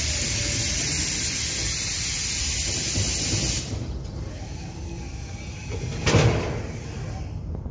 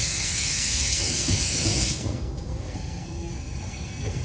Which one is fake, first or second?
second